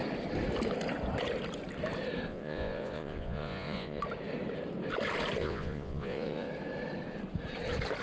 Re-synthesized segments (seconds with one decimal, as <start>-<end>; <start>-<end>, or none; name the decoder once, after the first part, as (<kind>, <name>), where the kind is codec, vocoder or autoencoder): 2.3-4.0 (vocoder, Vocos); 5.4-6.5